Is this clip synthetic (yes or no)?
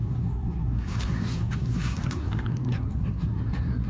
yes